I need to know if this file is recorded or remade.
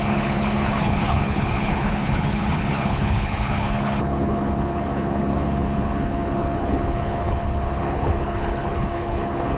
remade